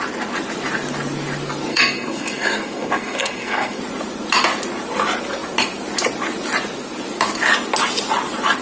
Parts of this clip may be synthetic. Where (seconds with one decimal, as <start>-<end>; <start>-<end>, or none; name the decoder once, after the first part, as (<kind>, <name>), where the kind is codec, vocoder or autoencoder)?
1.7-3.8 (codec, SNAC)